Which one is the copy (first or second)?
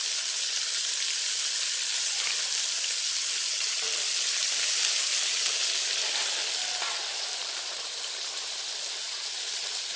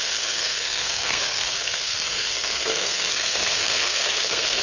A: second